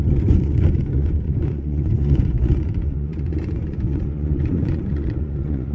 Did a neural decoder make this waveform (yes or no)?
yes